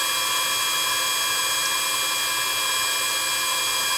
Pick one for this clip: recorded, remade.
recorded